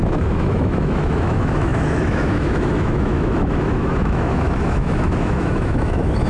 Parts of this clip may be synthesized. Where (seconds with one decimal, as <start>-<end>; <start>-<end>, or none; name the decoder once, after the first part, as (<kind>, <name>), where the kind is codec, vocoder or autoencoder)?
0.0-6.3 (autoencoder, DAC-VAE)